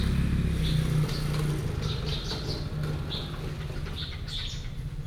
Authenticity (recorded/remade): recorded